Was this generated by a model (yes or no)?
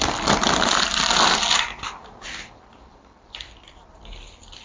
no